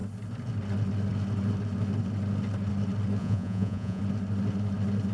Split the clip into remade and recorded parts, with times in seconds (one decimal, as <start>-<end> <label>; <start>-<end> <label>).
0.0-3.2 recorded; 3.2-4.0 remade; 4.0-5.1 recorded